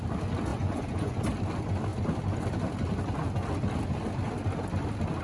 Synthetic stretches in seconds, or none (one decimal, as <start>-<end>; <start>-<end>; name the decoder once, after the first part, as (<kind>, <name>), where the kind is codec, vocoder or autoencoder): 0.5-1.2 (vocoder, Vocos)